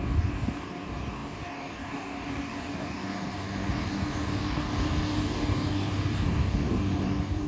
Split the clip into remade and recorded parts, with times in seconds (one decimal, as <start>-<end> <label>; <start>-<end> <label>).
0.0-7.5 remade